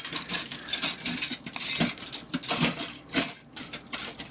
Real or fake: real